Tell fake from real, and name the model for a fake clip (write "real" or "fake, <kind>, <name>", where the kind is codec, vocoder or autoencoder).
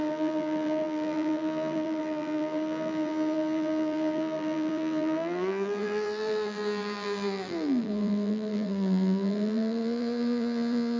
fake, vocoder, BigVGAN v2